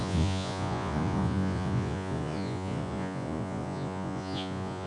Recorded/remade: remade